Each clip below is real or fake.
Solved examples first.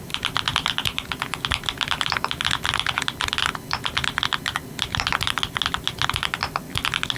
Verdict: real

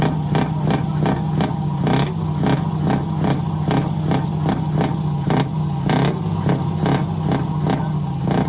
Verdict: real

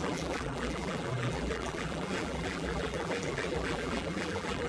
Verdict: fake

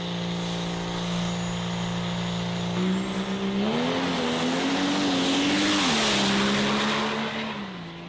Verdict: real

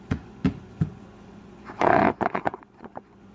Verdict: fake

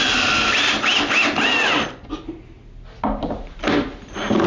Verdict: real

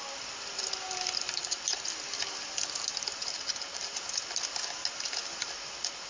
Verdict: real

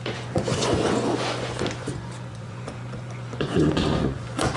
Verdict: fake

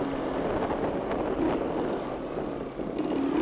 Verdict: real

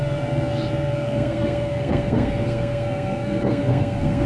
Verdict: fake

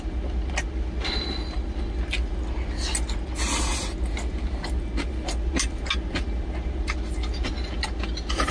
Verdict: real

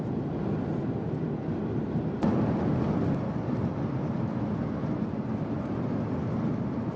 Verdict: real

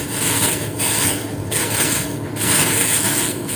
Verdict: fake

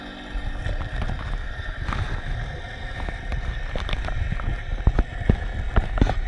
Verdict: real